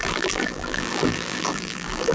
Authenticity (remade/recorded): remade